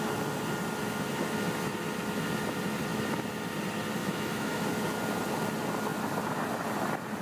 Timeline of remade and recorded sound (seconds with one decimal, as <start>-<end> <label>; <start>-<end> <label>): 0.0-4.0 recorded; 4.0-4.6 remade; 4.6-7.2 recorded